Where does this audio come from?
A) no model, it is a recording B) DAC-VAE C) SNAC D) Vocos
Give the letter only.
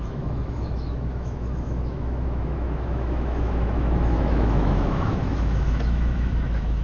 B